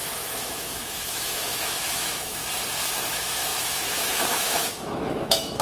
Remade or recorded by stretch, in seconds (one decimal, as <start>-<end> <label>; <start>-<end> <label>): 0.0-2.4 remade; 2.4-3.1 recorded; 3.1-5.6 remade